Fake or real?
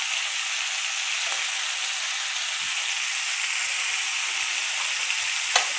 real